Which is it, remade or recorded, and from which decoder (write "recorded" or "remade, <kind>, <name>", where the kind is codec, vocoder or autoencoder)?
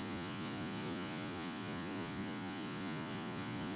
remade, vocoder, Vocos